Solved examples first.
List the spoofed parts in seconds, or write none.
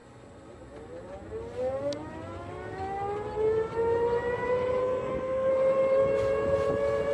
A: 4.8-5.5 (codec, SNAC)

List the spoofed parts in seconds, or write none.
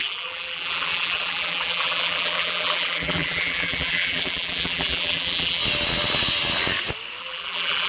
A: 0.0-5.6 (vocoder, BigVGAN v2); 7.2-7.9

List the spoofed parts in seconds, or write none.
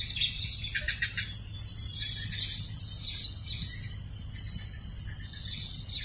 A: none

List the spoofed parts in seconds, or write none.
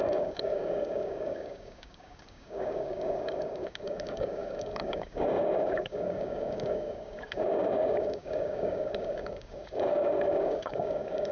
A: 0.0-11.3 (codec, DAC)